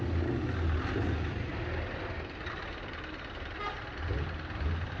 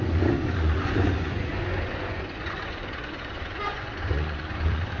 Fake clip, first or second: second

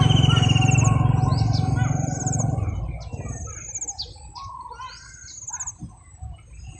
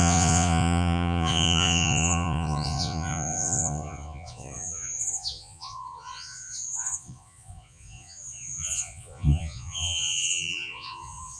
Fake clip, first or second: second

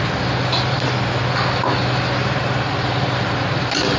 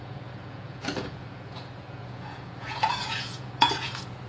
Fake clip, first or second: second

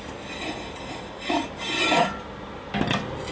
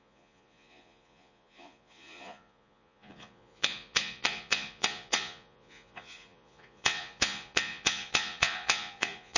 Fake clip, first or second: second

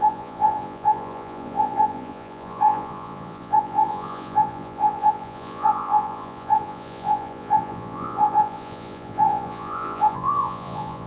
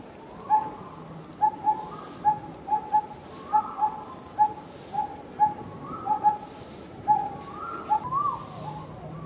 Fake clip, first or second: first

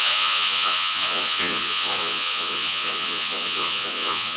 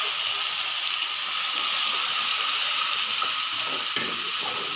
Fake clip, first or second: first